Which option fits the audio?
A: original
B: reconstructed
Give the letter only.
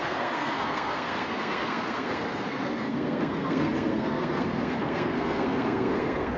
B